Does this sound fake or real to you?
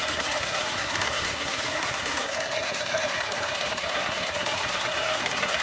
fake